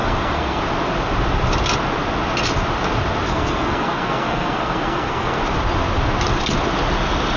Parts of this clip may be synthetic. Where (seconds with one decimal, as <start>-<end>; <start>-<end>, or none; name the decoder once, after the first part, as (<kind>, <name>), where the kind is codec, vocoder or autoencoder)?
0.0-0.6 (codec, SNAC); 3.3-5.4